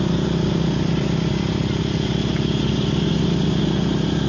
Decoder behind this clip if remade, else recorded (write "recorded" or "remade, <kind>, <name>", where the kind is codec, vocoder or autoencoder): recorded